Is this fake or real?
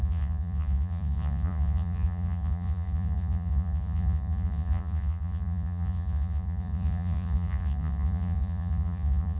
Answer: fake